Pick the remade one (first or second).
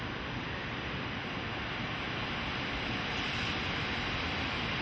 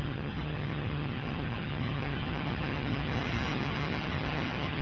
second